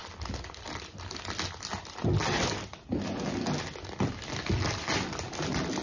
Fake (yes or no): no